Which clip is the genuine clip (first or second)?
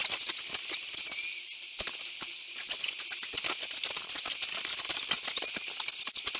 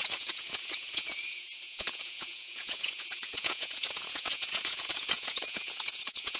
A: first